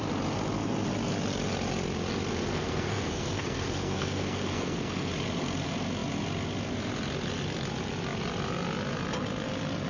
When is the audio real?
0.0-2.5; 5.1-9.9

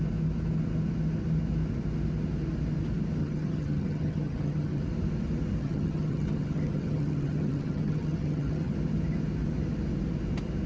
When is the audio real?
0.0-3.2; 4.8-5.6; 8.7-10.7

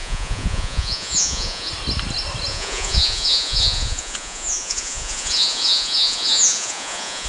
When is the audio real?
1.7-2.5